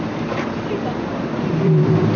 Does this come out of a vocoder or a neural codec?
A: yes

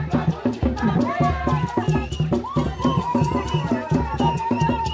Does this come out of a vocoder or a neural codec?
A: yes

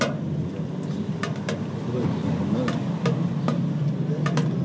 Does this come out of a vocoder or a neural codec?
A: no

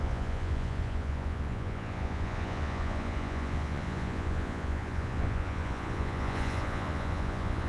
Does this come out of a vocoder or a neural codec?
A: yes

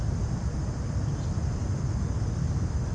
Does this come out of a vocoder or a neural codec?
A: no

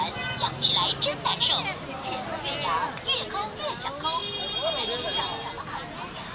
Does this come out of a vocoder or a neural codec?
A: no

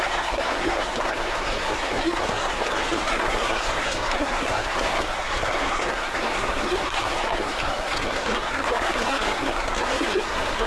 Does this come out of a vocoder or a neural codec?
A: yes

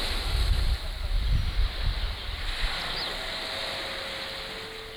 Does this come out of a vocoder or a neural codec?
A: no